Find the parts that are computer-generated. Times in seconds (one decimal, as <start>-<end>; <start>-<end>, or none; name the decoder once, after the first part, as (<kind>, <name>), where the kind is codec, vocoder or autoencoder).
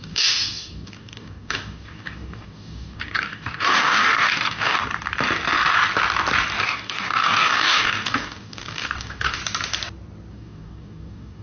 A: 0.0-4.8 (codec, DAC); 6.6-9.4; 10.3-11.4